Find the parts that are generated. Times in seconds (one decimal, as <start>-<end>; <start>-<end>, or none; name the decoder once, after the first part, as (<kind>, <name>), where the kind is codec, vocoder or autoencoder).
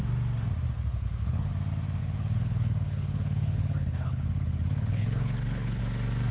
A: 0.9-1.5 (codec, HILCodec); 2.0-5.8